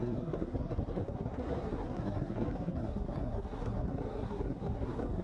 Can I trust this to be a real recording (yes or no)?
no